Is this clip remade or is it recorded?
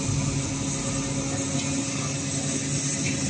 recorded